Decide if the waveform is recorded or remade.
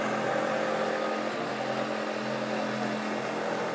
recorded